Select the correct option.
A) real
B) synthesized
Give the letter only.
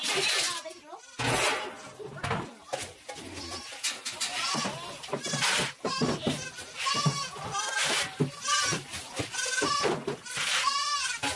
A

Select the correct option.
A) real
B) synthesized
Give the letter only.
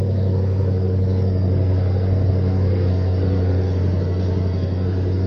B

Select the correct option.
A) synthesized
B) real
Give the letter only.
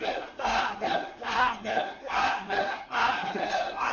A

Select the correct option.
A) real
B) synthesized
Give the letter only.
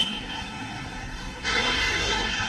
B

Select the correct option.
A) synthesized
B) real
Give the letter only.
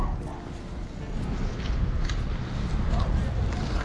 B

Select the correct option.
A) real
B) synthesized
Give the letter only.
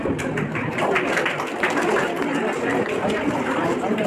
A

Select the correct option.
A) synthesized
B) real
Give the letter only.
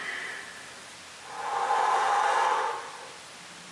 B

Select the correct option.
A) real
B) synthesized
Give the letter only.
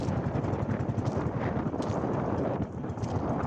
A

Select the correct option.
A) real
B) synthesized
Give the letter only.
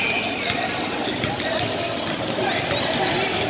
A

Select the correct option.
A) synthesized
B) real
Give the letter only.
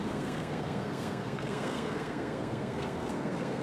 A